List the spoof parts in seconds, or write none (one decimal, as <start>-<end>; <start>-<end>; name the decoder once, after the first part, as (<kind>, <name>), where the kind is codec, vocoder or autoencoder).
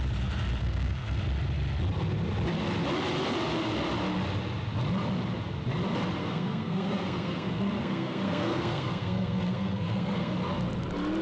0.6-1.2 (codec, SNAC); 6.2-10.3